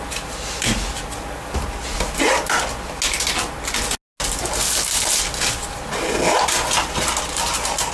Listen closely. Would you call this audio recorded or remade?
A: recorded